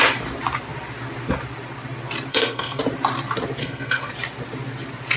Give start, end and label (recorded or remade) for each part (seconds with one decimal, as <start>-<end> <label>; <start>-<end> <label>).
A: 0.0-2.3 recorded; 2.3-2.8 remade; 2.8-3.6 recorded; 3.6-4.1 remade; 4.1-5.2 recorded